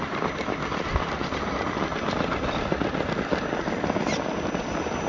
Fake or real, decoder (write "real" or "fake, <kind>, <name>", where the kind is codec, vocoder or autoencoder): real